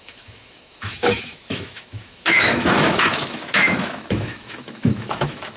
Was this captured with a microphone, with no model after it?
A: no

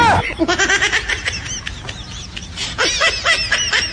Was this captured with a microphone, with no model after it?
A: yes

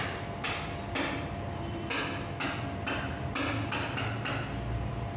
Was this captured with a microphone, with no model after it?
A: yes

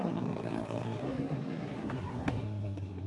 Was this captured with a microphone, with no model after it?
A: no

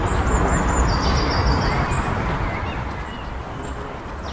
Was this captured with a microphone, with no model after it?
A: yes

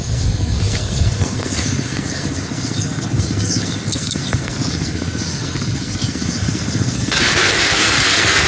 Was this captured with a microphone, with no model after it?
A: no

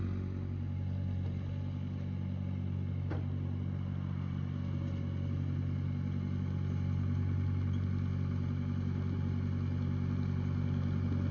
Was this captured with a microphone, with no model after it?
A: yes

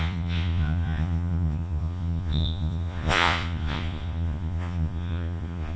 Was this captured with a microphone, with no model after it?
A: no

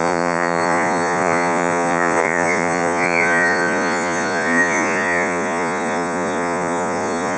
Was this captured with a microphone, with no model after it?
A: no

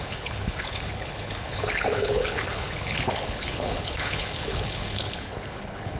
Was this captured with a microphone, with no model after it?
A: no